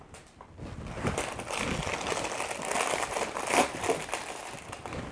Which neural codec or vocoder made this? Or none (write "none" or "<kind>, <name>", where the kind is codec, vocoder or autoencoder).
none